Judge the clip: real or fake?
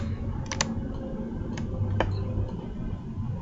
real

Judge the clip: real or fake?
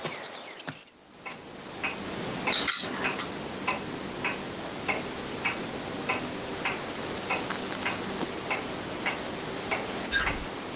real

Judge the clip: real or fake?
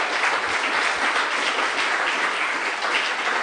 real